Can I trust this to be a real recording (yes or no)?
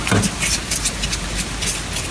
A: yes